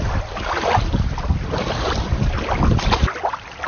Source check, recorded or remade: recorded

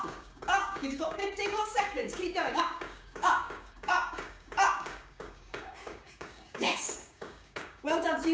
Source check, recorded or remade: remade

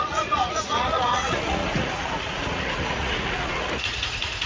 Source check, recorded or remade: remade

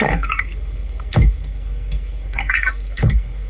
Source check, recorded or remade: remade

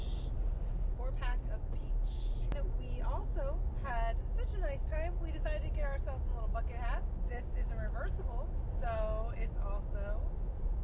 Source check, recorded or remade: recorded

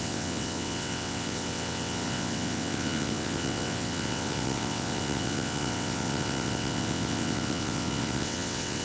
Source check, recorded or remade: remade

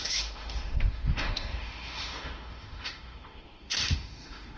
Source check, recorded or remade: remade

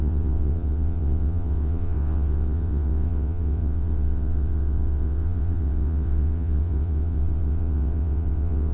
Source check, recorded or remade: remade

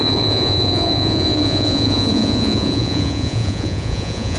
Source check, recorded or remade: remade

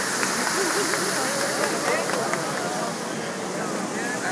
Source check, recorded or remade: recorded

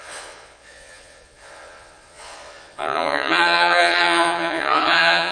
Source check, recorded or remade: remade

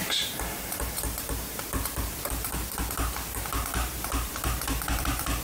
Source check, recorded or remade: remade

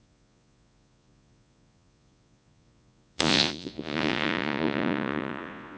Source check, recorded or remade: remade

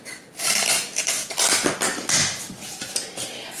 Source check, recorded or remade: recorded